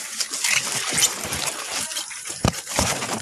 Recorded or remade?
remade